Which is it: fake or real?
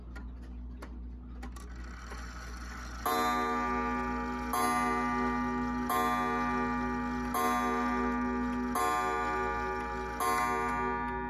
real